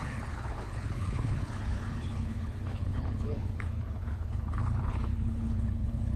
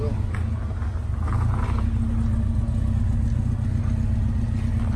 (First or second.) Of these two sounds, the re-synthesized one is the first